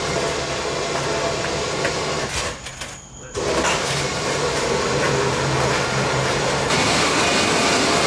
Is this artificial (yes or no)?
no